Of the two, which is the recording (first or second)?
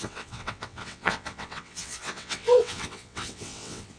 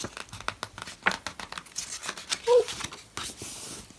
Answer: second